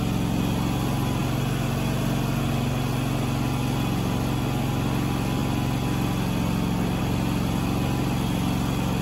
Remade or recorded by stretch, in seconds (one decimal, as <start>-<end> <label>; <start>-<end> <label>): 0.0-9.0 recorded